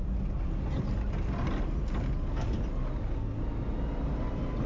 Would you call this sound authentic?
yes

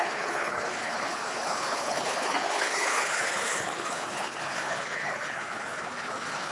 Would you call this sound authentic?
no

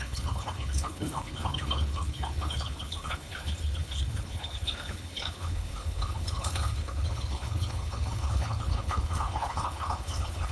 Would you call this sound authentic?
no